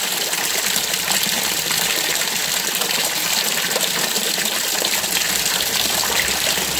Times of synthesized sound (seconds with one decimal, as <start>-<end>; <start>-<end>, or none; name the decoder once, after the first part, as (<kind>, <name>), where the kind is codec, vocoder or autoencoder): none